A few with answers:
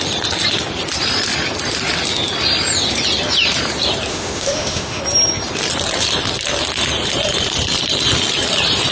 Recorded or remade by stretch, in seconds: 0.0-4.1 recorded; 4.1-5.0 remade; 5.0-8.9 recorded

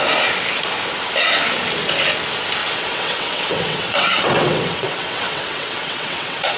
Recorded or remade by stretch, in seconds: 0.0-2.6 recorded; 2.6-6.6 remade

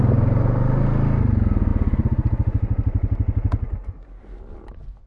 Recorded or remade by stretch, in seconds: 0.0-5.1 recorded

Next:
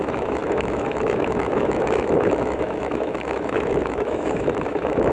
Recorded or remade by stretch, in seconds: 0.0-5.1 remade

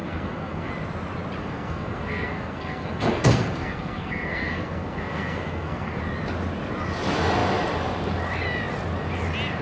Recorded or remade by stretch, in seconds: 0.0-0.7 remade; 0.7-1.4 recorded; 1.4-6.0 remade; 6.0-9.6 recorded

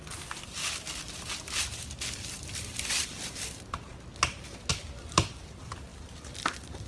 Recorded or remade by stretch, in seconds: 0.0-0.6 remade; 0.6-1.7 recorded; 1.7-4.1 remade; 4.1-4.7 recorded; 4.7-6.9 remade